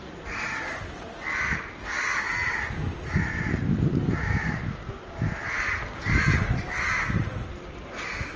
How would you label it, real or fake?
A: real